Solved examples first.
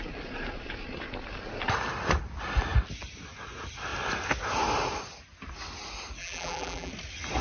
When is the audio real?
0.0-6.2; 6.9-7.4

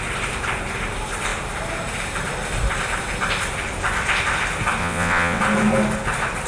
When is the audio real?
0.0-4.8; 5.4-6.5

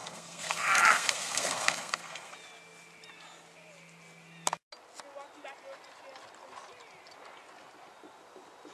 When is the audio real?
2.3-8.7

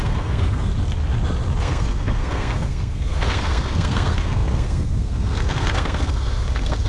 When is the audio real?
0.7-1.6

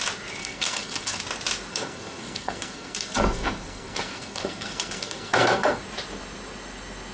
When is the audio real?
0.0-0.4; 1.2-1.7; 5.8-7.1

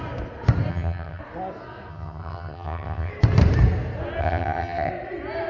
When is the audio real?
0.0-0.7; 1.2-1.9; 3.1-4.2; 4.9-5.5